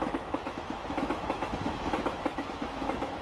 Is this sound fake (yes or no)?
yes